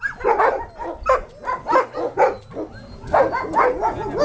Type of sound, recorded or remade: recorded